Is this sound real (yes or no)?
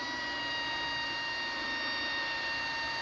yes